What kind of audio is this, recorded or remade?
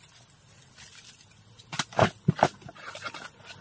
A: recorded